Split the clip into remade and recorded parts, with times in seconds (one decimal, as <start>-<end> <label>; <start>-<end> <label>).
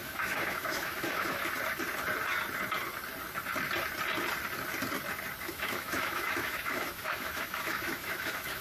0.0-1.4 remade; 1.4-5.4 recorded; 5.4-8.6 remade